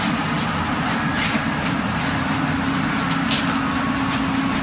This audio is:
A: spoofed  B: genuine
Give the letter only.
B